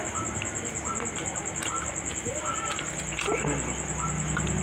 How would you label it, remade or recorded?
recorded